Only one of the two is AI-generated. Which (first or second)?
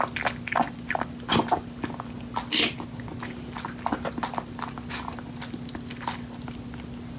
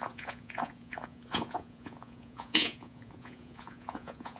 second